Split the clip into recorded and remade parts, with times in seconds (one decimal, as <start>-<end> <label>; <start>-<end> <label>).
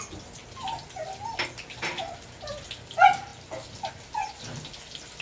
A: 0.0-5.2 recorded